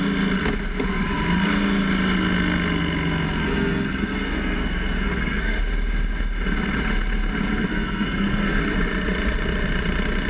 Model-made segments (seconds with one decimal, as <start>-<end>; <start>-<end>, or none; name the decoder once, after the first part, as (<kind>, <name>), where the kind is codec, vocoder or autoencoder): 3.4-5.6 (codec, SNAC); 7.7-8.6